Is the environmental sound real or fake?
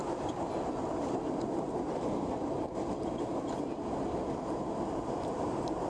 real